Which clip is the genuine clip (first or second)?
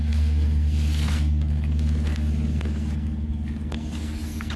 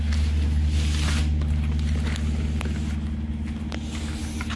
second